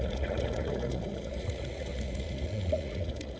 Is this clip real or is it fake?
fake